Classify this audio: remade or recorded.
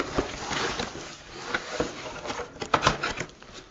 recorded